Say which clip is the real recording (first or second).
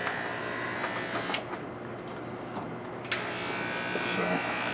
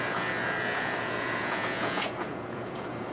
first